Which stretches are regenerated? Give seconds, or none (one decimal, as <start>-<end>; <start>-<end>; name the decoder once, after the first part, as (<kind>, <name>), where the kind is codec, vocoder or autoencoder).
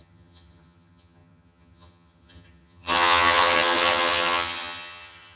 0.0-5.4 (vocoder, HiFi-GAN)